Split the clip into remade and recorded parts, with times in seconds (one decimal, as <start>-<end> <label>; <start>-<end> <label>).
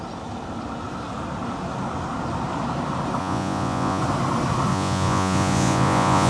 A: 0.0-3.2 recorded; 3.2-4.0 remade; 4.0-4.7 recorded; 4.7-6.3 remade